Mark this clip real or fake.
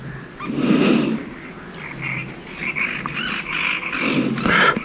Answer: real